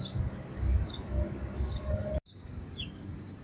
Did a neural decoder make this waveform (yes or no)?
yes